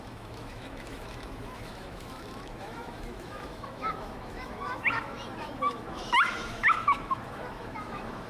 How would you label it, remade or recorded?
remade